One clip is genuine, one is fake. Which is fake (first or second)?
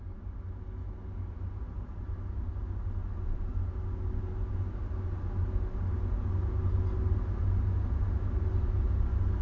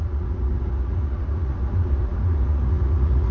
second